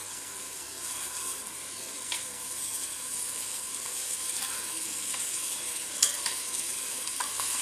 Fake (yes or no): yes